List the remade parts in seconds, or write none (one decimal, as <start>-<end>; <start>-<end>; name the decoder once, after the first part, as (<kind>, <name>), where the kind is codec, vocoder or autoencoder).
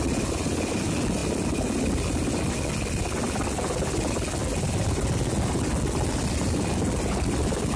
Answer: none